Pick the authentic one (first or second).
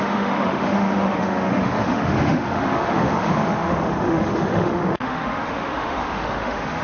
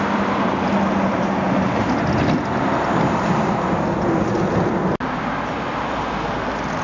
second